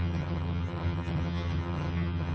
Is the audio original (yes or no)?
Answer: no